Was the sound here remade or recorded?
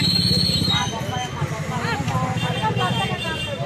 recorded